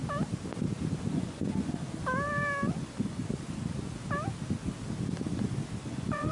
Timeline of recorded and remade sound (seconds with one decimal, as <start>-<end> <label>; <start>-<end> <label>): 0.0-1.1 recorded; 1.1-1.8 remade; 1.8-2.8 recorded; 2.8-3.2 remade; 3.2-5.8 recorded; 5.8-6.3 remade